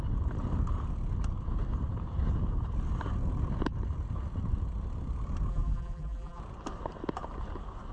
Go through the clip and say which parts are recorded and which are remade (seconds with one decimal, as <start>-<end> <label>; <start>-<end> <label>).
0.0-5.5 recorded; 5.5-6.4 remade; 6.4-7.9 recorded